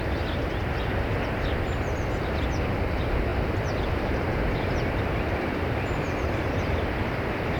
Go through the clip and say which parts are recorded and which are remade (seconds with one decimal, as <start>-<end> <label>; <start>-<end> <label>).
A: 0.0-3.3 recorded; 3.3-7.6 remade

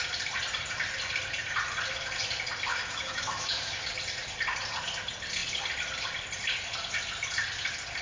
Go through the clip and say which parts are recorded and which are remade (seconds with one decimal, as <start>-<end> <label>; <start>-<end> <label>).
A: 0.0-2.7 recorded; 2.7-3.8 remade; 3.8-8.0 recorded

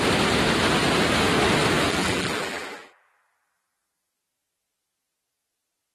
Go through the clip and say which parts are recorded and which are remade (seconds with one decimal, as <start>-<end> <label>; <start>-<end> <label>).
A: 0.0-1.9 recorded; 1.9-4.1 remade; 4.1-5.9 recorded

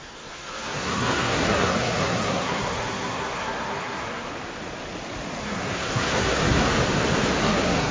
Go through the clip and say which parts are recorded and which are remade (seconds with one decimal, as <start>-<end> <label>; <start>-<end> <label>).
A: 0.0-4.3 remade; 4.3-5.4 recorded; 5.4-6.7 remade; 6.7-7.4 recorded; 7.4-7.9 remade

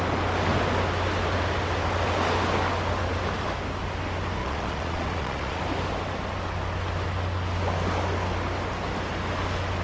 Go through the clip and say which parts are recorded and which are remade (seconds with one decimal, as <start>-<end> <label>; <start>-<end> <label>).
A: 0.0-4.4 recorded; 4.4-5.6 remade; 5.6-9.8 recorded

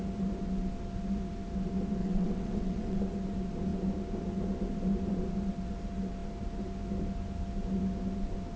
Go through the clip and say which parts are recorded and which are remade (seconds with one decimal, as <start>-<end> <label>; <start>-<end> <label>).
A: 0.0-2.0 recorded; 2.0-3.0 remade; 3.0-8.6 recorded

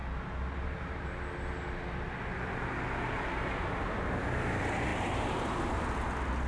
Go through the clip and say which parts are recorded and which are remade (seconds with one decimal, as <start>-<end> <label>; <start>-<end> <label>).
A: 0.0-6.5 recorded

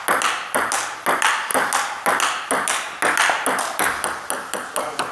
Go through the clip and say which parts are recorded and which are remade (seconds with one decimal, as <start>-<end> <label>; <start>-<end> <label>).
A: 0.0-5.1 recorded